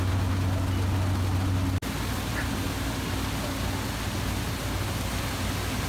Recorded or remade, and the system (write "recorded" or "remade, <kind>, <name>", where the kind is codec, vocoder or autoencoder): recorded